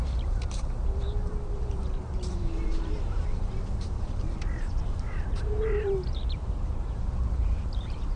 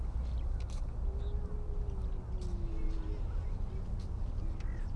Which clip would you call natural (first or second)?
second